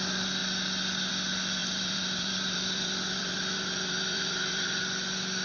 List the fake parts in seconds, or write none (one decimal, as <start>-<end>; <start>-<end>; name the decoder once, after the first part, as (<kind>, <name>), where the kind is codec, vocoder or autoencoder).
1.6-4.8 (vocoder, BigVGAN v2)